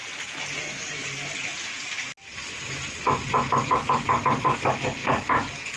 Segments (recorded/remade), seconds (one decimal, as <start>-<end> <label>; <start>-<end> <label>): 0.0-0.6 recorded; 0.6-1.0 remade; 1.0-3.7 recorded; 3.7-5.8 remade